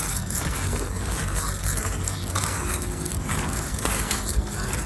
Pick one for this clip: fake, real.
fake